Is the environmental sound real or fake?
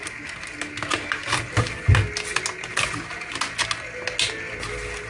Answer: real